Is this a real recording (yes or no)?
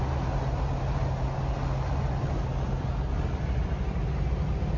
yes